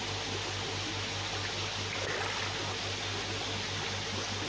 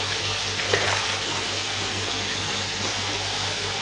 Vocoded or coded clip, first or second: second